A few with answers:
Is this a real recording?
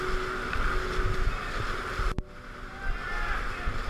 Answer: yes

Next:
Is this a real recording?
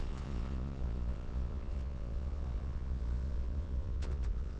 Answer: no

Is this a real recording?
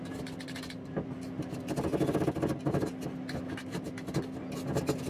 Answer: yes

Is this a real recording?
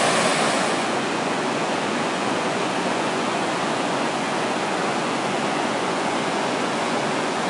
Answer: no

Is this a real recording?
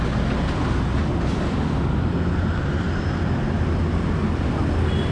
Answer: yes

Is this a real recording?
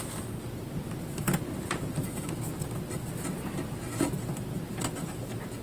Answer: yes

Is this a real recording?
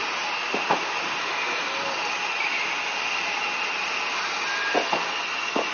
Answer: yes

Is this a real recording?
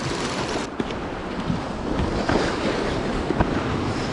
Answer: yes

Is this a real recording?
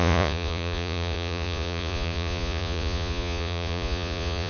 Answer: no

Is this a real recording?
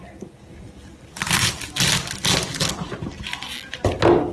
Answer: yes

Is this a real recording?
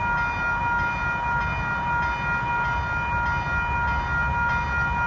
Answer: yes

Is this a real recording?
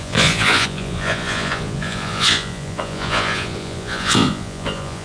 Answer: no